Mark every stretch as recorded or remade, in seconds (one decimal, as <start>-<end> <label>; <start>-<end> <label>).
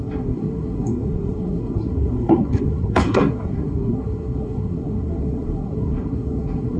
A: 0.0-6.8 remade